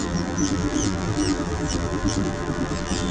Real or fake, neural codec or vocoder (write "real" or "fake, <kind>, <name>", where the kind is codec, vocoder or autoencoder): fake, vocoder, BigVGAN v2